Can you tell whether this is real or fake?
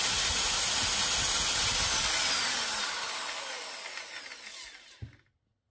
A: real